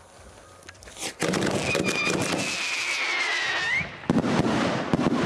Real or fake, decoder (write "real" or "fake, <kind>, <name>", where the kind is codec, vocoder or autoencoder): real